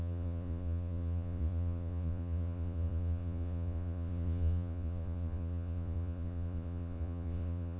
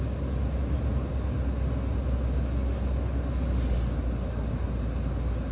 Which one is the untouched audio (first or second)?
second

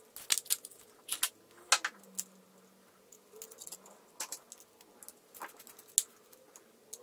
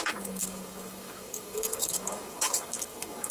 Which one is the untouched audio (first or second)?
first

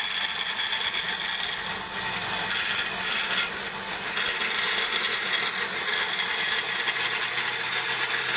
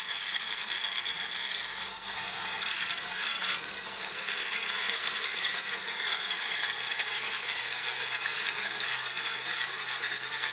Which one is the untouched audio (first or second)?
first